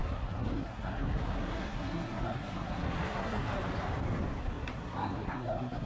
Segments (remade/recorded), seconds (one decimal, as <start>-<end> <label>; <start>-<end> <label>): 0.0-3.5 remade; 3.5-4.4 recorded; 4.4-5.9 remade